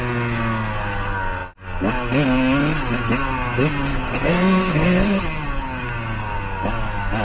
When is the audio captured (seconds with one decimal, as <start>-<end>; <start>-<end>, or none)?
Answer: 0.0-3.9; 5.2-7.2